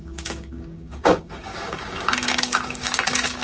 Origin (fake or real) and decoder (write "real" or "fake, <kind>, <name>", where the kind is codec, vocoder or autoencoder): fake, codec, DAC